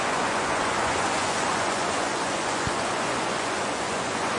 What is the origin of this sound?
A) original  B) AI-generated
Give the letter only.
B